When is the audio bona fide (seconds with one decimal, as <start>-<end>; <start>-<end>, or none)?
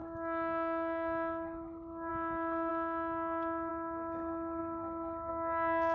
0.0-5.9